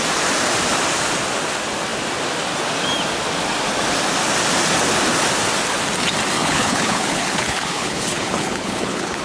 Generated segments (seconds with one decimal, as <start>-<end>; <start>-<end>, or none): 6.4-9.2